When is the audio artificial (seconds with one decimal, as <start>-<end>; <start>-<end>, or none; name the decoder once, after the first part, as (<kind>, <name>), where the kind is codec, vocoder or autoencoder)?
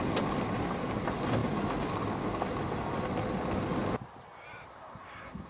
4.7-5.5 (codec, SNAC)